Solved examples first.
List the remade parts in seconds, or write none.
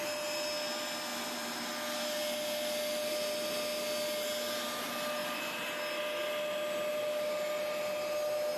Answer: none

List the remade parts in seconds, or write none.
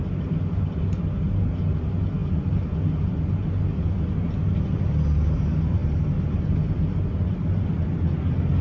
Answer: none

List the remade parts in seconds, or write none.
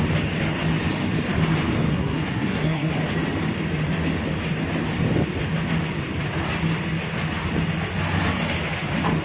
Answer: 1.9-2.9 (codec, SNAC)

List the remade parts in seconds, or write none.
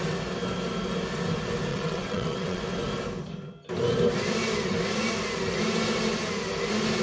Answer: 1.7-2.6 (vocoder, WaveNeXt)